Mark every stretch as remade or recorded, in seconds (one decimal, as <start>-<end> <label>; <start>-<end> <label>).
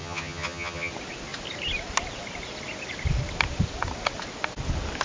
0.0-0.9 remade; 0.9-5.0 recorded